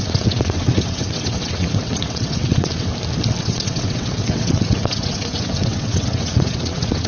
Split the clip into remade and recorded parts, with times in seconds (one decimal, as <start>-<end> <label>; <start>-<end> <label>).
0.0-2.9 remade; 2.9-3.4 recorded; 3.4-7.1 remade